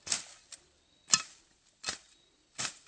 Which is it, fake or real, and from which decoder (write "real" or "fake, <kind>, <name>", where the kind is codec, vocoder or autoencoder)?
real